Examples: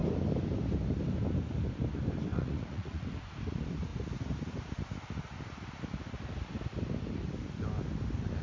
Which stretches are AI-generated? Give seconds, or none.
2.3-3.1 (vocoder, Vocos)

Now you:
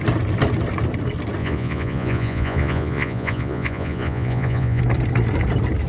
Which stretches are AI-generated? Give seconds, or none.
1.4-4.8 (vocoder, Vocos)

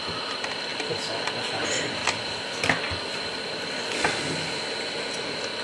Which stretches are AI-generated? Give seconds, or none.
none